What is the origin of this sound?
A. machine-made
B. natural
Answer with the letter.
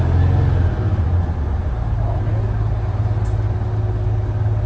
B